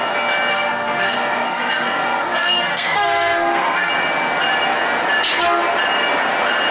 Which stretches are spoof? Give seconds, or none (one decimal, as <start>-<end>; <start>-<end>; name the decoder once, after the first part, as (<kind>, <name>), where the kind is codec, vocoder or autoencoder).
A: 0.5-3.9 (codec, SNAC)